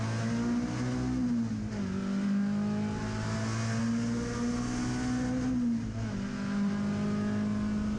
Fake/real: real